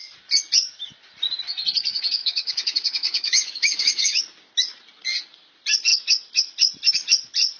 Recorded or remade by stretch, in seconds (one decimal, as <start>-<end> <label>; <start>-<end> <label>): 0.0-2.2 recorded; 2.2-4.2 remade; 4.2-7.6 recorded